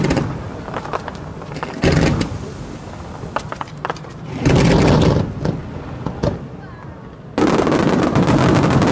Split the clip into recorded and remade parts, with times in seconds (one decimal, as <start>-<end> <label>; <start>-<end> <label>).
0.0-8.9 recorded